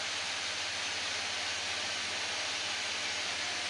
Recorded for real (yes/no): yes